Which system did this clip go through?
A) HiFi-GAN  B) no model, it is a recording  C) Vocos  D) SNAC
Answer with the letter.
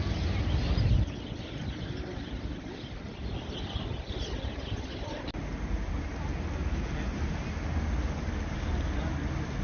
B